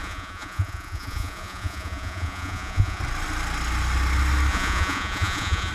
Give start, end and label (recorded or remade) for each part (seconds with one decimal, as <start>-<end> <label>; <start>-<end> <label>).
0.0-3.0 remade; 3.0-4.5 recorded; 4.5-5.7 remade